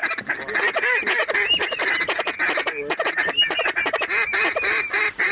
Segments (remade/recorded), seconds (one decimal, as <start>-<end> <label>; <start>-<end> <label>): 0.0-5.3 recorded